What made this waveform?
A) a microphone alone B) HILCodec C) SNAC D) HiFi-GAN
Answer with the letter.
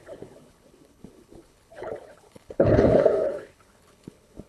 B